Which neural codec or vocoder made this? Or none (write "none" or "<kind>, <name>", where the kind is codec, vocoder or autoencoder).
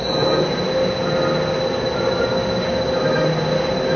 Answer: none